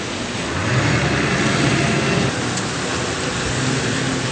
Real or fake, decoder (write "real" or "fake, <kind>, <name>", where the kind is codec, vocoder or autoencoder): real